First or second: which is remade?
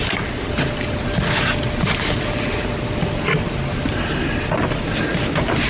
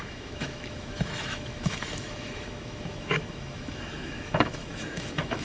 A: second